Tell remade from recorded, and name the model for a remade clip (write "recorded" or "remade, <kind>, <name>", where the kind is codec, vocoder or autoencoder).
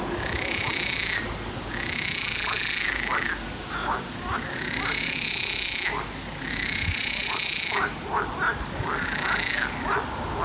recorded